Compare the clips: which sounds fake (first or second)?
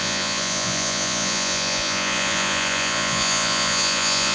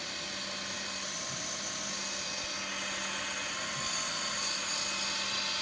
first